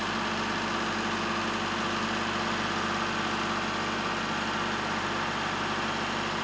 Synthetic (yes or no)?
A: no